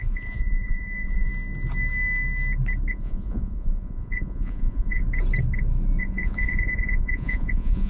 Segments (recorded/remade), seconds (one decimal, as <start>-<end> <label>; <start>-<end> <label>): 0.0-1.3 remade; 1.3-2.9 recorded; 2.9-5.0 remade; 5.0-6.0 recorded; 6.0-7.9 remade